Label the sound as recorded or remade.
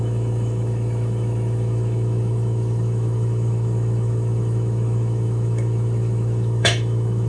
remade